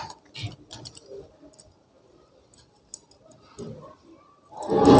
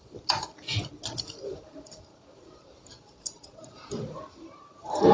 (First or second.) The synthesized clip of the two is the second